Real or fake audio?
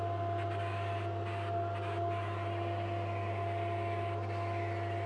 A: real